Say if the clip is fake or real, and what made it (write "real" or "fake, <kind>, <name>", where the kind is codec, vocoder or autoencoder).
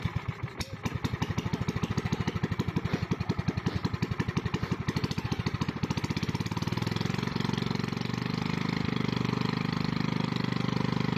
real